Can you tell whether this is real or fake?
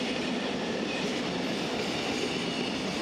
real